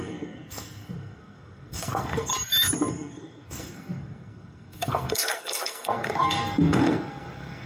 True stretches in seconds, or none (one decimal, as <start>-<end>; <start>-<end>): 2.3-2.9